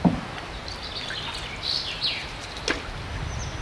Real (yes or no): yes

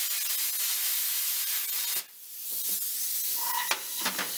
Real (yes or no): yes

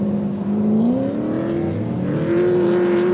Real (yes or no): yes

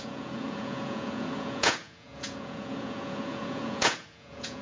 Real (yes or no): no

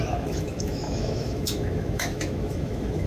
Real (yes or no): no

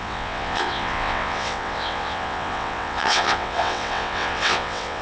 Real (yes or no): no